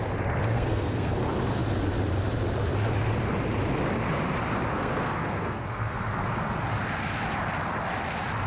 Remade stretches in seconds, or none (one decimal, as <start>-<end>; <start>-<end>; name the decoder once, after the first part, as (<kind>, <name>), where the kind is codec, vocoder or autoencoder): 0.5-1.1 (codec, SNAC); 4.7-6.6